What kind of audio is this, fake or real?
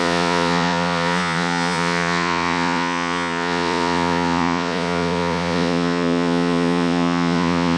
fake